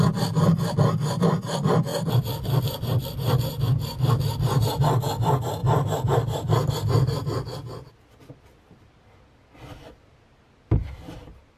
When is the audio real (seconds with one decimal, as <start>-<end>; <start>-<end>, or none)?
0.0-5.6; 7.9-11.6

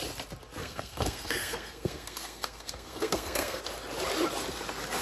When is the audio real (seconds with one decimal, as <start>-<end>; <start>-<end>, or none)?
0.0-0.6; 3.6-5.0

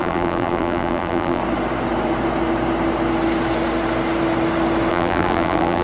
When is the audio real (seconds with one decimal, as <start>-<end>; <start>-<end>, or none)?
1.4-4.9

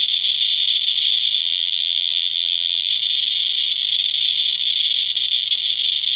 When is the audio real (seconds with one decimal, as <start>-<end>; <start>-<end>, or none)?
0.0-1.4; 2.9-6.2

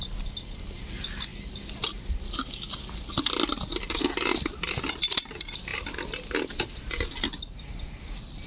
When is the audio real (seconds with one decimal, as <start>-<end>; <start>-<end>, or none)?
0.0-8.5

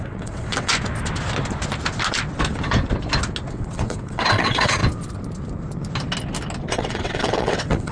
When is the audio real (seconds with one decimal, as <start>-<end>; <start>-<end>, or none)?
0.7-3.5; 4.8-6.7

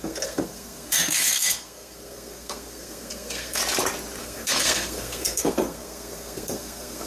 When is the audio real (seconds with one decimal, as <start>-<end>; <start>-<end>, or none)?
3.6-4.2

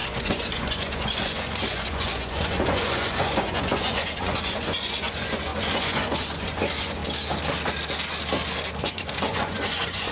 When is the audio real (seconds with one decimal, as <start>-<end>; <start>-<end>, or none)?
7.0-8.8